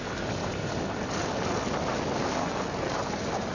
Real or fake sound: real